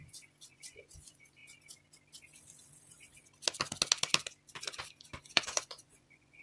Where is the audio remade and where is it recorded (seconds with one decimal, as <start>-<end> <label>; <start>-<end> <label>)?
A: 0.0-1.4 remade; 1.4-5.2 recorded; 5.2-6.4 remade